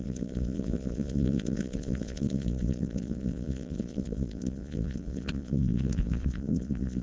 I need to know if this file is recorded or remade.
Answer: remade